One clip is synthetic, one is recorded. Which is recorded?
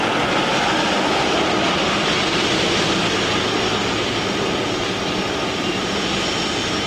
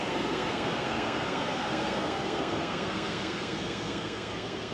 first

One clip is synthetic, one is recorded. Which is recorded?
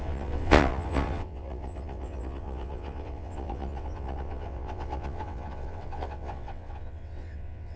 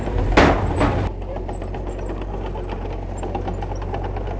second